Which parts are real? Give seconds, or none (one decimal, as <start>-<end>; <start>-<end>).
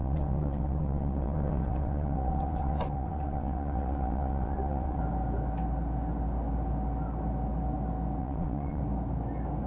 5.0-8.2; 8.8-9.7